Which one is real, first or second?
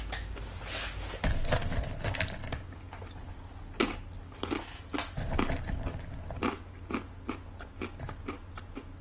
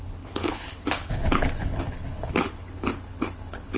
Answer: first